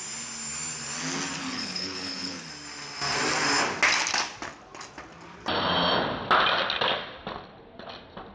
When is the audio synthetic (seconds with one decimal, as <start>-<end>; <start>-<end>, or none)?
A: 1.4-2.5

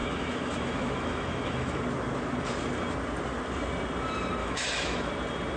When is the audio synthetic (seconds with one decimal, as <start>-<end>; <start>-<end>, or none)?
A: 0.0-1.8; 4.4-5.1

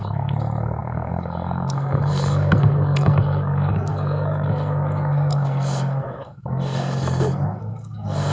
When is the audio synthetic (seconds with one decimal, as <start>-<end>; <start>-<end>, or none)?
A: 0.0-8.3

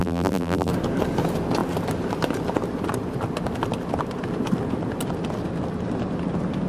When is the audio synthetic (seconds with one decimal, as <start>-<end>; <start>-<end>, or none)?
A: 0.0-0.7

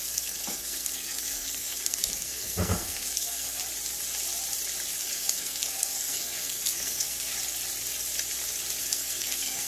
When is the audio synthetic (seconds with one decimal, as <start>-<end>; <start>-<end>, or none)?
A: 0.0-3.6; 5.0-7.3; 8.8-9.7